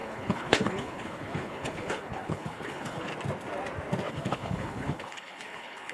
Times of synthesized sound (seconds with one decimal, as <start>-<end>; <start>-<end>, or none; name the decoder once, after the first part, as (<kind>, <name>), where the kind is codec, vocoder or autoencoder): 0.0-3.1 (codec, HILCodec); 4.1-5.9